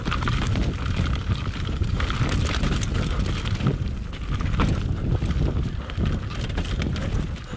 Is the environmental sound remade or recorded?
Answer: recorded